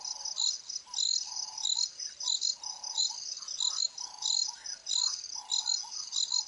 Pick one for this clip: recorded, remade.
recorded